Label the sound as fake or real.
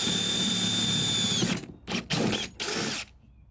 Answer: real